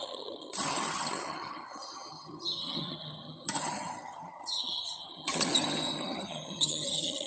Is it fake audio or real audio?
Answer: fake